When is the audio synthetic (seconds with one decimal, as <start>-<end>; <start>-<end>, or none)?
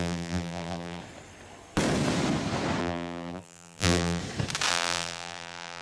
0.0-1.0; 2.8-4.2; 4.7-5.8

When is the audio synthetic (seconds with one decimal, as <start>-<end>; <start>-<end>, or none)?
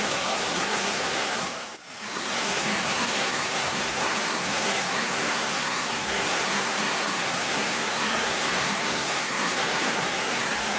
0.0-10.8